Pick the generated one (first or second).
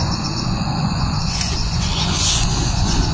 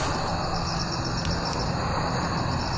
first